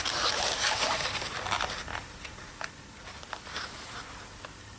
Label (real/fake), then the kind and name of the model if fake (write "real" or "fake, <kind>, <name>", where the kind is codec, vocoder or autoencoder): real